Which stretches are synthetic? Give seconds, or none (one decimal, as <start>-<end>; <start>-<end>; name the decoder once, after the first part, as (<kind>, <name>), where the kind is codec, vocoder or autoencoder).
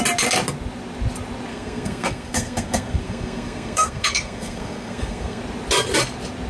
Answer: 1.5-5.4 (codec, SNAC)